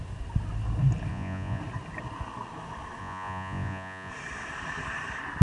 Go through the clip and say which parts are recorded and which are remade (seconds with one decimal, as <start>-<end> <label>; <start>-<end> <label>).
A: 0.0-1.1 recorded; 1.1-1.6 remade; 1.6-3.0 recorded; 3.0-4.1 remade; 4.1-5.4 recorded